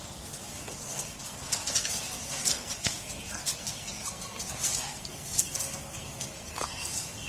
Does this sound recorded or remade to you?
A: remade